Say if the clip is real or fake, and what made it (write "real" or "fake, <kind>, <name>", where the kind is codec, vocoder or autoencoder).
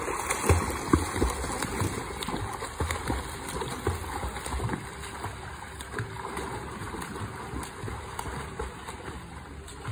real